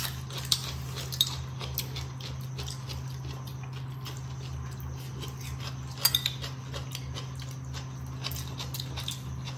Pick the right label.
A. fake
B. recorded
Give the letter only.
B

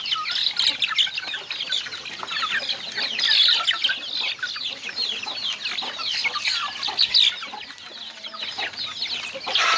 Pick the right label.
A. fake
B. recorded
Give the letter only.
B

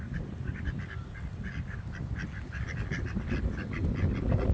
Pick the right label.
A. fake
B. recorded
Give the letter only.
B